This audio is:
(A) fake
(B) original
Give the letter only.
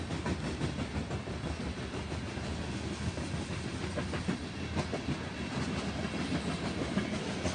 B